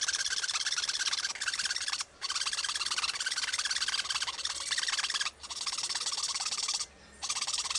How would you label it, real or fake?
real